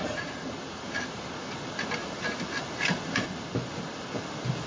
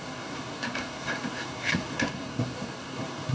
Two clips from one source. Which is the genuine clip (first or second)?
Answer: first